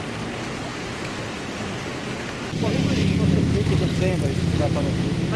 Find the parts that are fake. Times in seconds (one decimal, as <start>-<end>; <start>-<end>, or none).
0.7-1.2